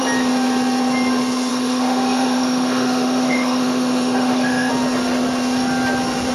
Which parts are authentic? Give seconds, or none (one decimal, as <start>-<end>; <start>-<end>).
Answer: 0.0-1.5; 4.7-6.3